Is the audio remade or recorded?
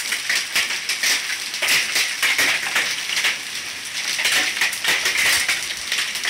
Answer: recorded